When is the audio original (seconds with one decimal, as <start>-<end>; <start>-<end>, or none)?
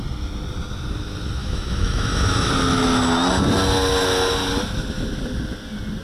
0.0-1.4; 2.5-6.0